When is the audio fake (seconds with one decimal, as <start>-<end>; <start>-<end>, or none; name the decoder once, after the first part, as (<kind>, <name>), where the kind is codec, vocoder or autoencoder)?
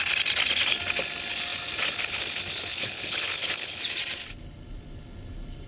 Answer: 2.7-3.8 (codec, HILCodec)